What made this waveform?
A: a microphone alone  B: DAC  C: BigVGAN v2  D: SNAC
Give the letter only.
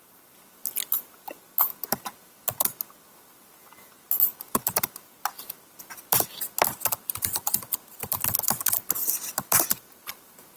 A